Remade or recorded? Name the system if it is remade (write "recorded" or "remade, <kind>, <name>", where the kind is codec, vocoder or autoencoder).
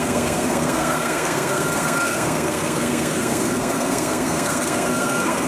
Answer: remade, codec, SNAC